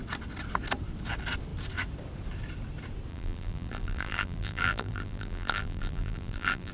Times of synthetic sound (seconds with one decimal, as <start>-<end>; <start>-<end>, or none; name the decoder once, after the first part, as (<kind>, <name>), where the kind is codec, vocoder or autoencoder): 3.1-6.7 (vocoder, BigVGAN v2)